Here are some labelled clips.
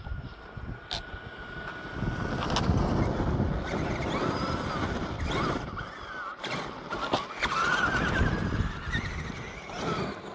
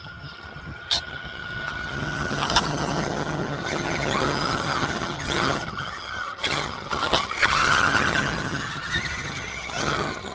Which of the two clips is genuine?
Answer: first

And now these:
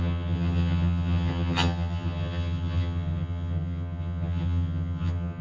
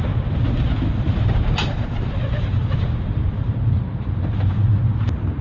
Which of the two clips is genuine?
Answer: second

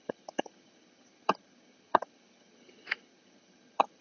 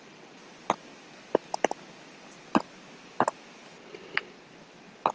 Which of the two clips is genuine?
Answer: second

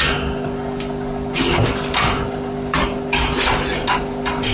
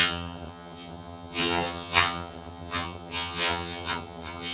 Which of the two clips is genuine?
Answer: first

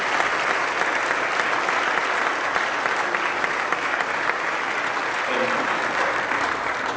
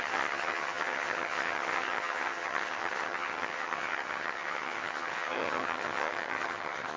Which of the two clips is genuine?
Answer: first